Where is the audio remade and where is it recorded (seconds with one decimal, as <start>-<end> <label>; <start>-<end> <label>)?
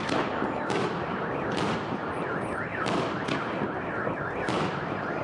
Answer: 0.0-5.2 recorded